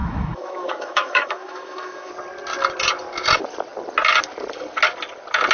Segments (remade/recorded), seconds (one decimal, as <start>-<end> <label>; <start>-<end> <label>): 0.0-2.1 remade; 2.1-5.5 recorded